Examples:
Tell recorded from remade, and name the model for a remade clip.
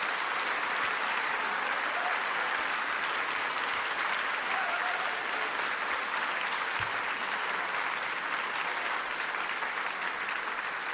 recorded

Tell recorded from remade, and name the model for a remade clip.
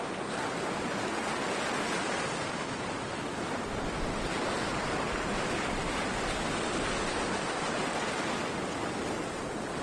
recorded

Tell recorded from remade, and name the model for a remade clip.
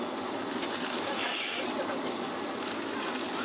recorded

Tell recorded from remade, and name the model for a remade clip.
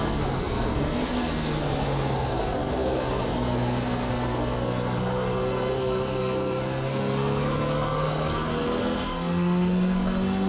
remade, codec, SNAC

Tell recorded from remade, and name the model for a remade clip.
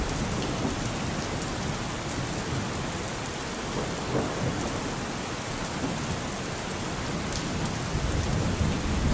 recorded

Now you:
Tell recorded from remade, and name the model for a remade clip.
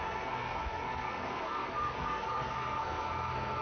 remade, codec, SNAC